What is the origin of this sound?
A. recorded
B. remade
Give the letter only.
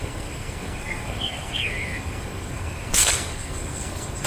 B